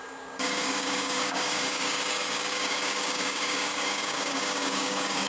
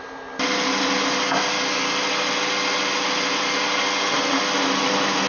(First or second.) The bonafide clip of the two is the second